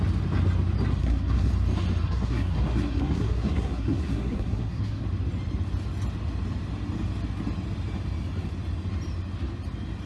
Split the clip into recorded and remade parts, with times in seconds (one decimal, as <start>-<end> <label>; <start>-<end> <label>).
0.0-1.0 recorded; 1.0-1.5 remade; 1.5-2.0 recorded; 2.0-5.0 remade; 5.0-10.1 recorded